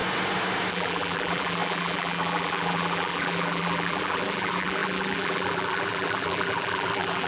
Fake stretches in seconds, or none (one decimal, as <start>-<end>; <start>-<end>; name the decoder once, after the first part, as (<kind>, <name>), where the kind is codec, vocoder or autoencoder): 0.7-7.3 (vocoder, BigVGAN v2)